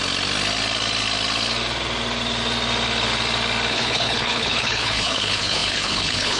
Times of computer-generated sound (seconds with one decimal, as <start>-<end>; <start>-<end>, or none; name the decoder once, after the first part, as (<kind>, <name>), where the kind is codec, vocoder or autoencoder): 3.7-6.4 (codec, HILCodec)